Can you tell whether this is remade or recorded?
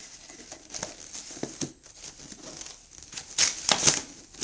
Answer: recorded